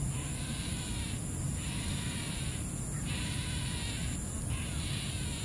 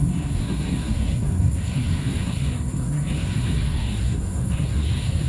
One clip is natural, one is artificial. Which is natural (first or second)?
first